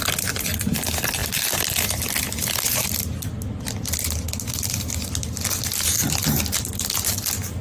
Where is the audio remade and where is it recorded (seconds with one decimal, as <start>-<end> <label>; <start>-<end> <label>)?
0.0-7.6 recorded